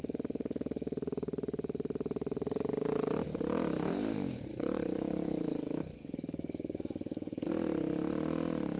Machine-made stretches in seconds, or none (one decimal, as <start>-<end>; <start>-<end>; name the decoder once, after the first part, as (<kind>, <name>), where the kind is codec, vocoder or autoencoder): 4.5-7.5 (codec, DAC)